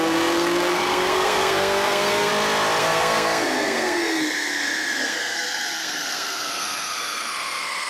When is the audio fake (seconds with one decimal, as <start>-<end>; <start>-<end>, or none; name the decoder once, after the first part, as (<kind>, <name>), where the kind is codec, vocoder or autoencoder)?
0.0-2.3 (codec, SNAC); 2.8-7.9